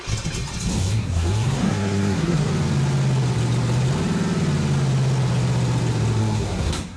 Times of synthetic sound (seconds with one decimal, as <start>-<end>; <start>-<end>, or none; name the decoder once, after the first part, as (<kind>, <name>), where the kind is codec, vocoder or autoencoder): 0.7-2.5 (codec, SNAC); 6.2-7.0